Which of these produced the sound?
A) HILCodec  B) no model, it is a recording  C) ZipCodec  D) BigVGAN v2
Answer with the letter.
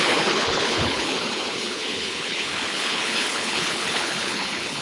A